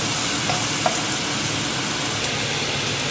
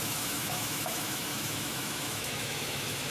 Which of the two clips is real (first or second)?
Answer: first